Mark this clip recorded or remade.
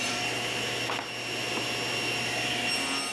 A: recorded